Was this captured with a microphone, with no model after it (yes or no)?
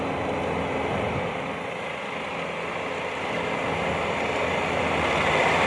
yes